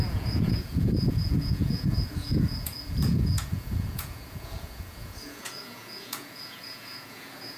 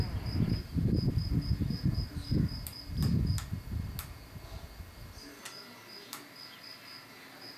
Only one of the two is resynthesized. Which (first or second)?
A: first